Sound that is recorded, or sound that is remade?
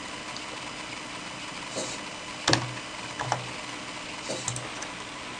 recorded